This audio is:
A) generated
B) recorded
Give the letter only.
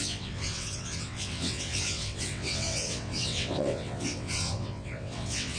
A